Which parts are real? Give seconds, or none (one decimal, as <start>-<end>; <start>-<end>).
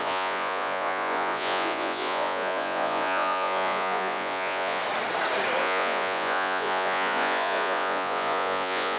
4.8-5.6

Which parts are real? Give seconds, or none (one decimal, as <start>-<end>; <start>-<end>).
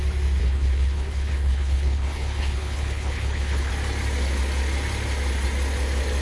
0.0-0.4; 3.7-6.2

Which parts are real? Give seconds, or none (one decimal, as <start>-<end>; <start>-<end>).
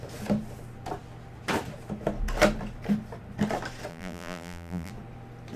0.0-3.9; 4.9-5.6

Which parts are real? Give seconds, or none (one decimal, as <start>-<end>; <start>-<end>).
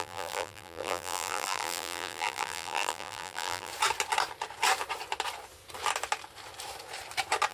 3.7-7.5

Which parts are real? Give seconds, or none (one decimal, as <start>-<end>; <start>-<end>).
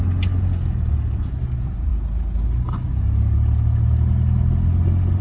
0.0-5.2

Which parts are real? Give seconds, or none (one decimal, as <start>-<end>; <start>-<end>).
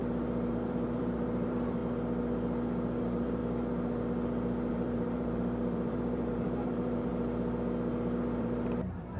0.0-0.5; 1.8-3.0; 3.4-4.7; 7.1-8.4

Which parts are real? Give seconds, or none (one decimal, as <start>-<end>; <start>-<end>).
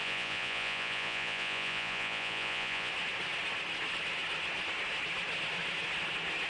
2.9-6.5